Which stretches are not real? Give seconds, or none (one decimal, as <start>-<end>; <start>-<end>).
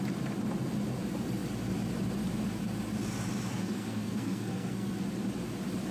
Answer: 3.5-5.0